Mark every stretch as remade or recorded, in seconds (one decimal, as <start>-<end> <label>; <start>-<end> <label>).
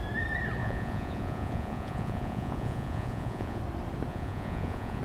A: 0.0-0.6 recorded; 0.6-3.6 remade; 3.6-4.1 recorded; 4.1-5.0 remade